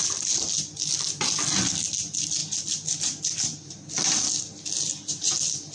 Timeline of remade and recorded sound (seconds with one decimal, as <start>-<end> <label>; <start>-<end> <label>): 0.0-5.7 recorded